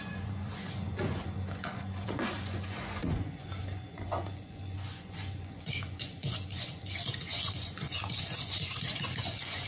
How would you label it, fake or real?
fake